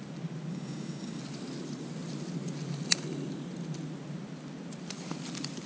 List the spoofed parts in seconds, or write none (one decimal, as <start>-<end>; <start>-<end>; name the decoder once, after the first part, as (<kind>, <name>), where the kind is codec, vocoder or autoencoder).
0.5-1.2 (codec, DAC)